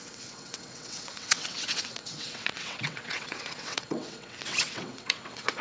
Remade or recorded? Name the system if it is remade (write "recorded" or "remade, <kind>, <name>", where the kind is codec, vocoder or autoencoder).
remade, vocoder, WaveNeXt